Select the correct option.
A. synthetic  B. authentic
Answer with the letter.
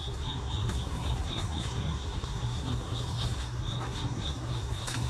A